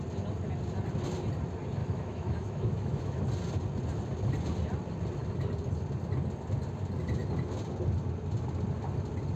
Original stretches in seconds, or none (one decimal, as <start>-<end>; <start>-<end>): 0.0-1.8; 3.2-9.4